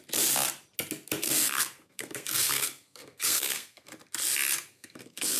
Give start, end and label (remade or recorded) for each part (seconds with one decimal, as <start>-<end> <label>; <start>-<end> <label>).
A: 0.0-1.2 recorded; 1.2-3.9 remade; 3.9-4.7 recorded; 4.7-5.4 remade